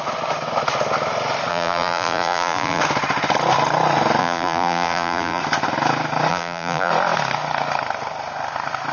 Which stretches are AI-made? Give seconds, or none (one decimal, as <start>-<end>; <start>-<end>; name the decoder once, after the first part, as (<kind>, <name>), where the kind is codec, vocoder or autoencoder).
1.5-2.8 (vocoder, BigVGAN v2); 4.2-5.4; 6.3-6.9